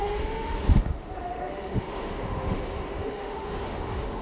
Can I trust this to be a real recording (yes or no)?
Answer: no